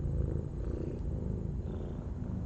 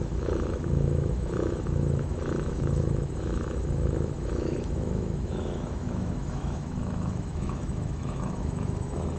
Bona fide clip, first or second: first